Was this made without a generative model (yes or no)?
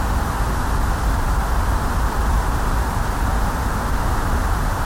yes